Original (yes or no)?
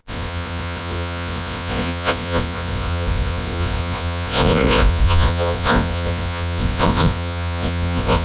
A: no